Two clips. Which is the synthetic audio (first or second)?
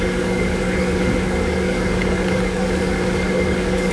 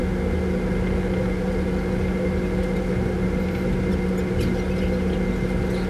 first